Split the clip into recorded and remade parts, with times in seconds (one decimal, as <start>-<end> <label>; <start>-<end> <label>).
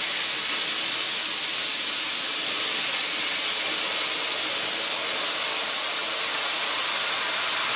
0.0-7.8 recorded